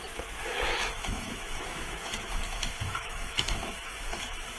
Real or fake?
fake